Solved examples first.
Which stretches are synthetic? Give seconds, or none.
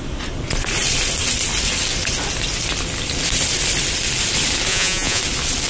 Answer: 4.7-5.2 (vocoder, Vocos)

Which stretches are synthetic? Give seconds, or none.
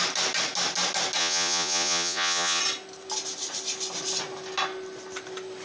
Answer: 1.2-2.6 (vocoder, Vocos)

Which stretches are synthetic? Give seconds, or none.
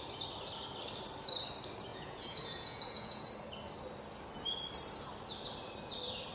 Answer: 1.9-3.3 (vocoder, Vocos)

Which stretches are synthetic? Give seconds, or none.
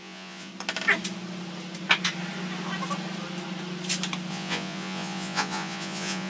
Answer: 0.0-0.5 (vocoder, Vocos); 4.3-6.3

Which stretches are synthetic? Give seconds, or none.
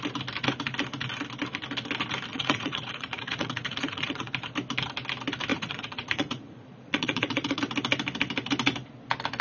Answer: 2.3-4.3 (vocoder, Vocos); 5.5-7.6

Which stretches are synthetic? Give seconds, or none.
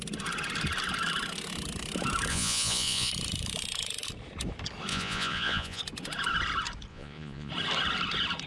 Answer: 2.3-3.1 (vocoder, Vocos); 4.9-5.8; 6.9-7.5